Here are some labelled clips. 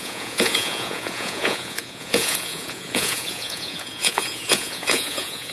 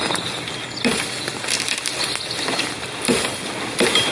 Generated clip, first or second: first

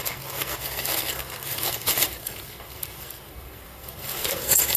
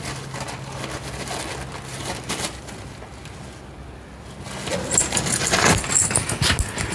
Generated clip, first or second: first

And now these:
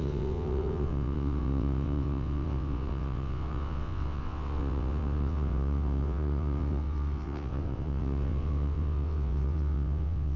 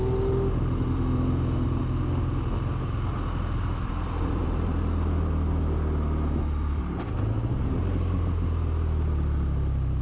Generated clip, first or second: first